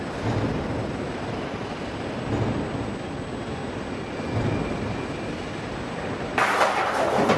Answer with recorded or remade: recorded